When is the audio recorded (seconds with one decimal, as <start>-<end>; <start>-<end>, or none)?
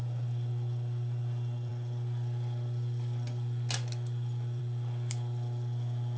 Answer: 0.0-6.2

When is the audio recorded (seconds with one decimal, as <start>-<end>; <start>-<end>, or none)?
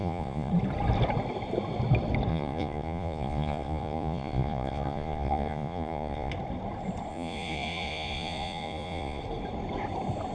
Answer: 0.5-2.3; 6.3-7.1; 9.2-10.3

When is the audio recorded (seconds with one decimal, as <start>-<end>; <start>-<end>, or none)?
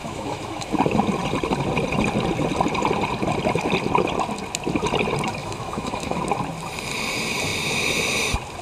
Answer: 0.7-5.4; 6.2-8.6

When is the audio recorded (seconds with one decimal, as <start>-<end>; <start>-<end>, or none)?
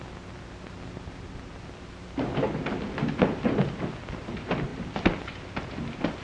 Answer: 0.0-6.2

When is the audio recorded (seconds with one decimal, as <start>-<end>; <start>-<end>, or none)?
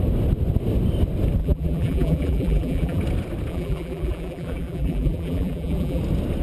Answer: 0.0-1.4; 3.0-3.5; 6.0-6.4